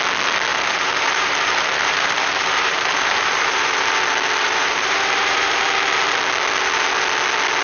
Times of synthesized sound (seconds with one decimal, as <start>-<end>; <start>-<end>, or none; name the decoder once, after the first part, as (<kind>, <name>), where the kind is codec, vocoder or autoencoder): 0.5-3.9 (vocoder, BigVGAN v2); 4.4-5.6